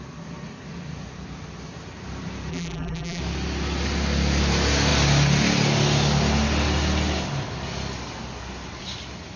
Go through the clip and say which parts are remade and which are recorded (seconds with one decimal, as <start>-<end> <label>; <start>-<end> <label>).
0.0-2.5 recorded; 2.5-3.2 remade; 3.2-9.4 recorded